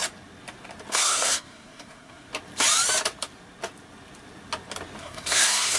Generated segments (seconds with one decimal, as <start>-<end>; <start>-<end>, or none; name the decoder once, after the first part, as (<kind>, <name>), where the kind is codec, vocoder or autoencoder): 0.9-2.3 (codec, SNAC); 5.0-5.8